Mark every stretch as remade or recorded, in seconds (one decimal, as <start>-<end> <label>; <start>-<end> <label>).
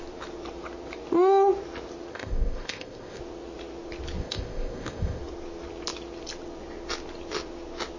0.0-2.1 recorded; 2.1-3.2 remade; 3.2-4.2 recorded; 4.2-5.2 remade; 5.2-8.0 recorded